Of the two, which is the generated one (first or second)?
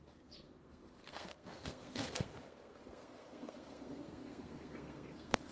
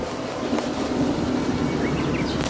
first